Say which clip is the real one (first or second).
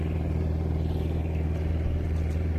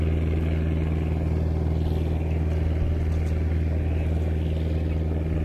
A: second